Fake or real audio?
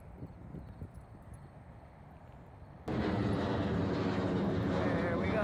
real